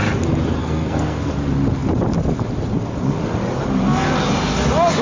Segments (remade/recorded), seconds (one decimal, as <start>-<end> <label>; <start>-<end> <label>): 0.0-0.6 recorded; 0.6-1.3 remade; 1.3-5.0 recorded